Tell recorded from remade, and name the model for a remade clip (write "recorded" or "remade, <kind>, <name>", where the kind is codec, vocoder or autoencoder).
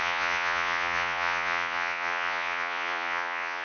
remade, vocoder, Vocos